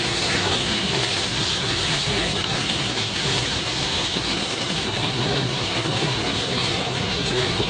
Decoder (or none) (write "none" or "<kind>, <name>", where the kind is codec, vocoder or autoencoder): codec, SNAC